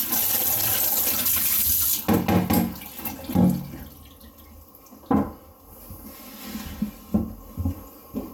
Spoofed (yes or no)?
no